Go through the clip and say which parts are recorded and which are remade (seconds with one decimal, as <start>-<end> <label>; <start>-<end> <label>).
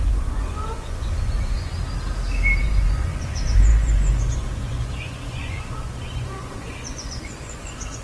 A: 0.0-1.7 remade; 1.7-2.6 recorded; 2.6-8.0 remade